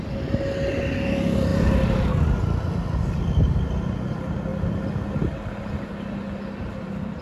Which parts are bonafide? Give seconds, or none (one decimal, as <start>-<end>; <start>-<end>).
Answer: 0.0-1.5; 2.1-7.2